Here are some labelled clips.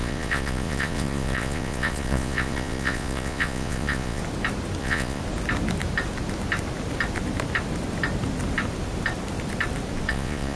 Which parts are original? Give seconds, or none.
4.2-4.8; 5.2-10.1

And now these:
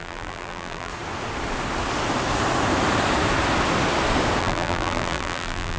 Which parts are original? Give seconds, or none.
0.9-4.4

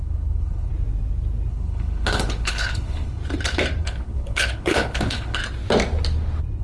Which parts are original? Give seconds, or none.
0.7-1.5; 3.2-3.8; 5.4-6.6